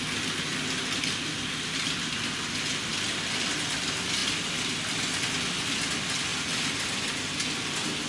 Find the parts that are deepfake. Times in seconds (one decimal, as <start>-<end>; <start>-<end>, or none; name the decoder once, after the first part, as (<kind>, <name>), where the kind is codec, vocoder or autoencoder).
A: none